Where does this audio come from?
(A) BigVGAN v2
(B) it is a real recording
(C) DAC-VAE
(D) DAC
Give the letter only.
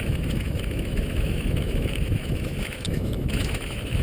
C